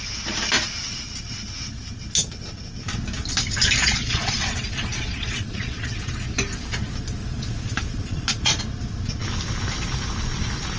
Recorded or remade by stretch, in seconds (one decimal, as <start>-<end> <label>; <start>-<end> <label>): 0.0-3.8 recorded; 3.8-6.1 remade; 6.1-7.2 recorded; 7.2-8.6 remade; 8.6-10.8 recorded